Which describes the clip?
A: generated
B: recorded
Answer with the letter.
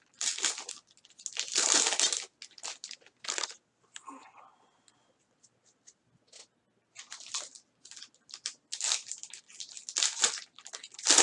B